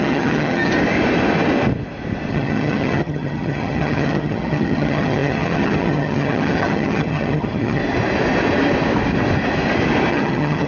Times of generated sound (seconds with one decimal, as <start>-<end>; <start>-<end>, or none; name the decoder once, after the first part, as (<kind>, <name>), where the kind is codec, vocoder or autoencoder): 0.0-0.7 (vocoder, HiFi-GAN); 2.3-7.8; 10.1-10.7